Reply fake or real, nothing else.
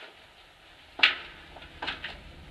real